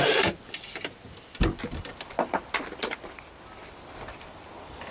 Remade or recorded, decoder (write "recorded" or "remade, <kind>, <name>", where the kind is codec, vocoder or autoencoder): recorded